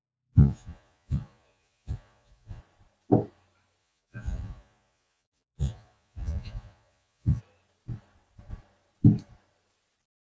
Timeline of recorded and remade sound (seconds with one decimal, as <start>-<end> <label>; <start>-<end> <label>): 0.0-2.6 remade; 2.6-3.8 recorded; 3.8-7.4 remade; 7.4-10.3 recorded